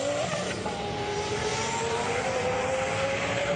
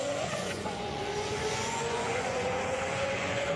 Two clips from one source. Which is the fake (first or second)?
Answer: second